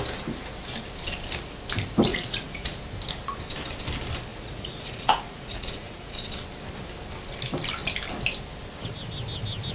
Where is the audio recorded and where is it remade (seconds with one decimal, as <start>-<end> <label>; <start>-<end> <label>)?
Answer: 0.0-2.1 recorded; 2.1-2.8 remade; 2.8-4.3 recorded; 4.3-6.1 remade; 6.1-9.7 recorded